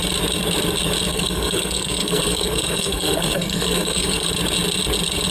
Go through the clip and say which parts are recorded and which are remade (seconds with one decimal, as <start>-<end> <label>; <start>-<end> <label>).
0.0-1.1 recorded; 1.1-4.3 remade; 4.3-5.3 recorded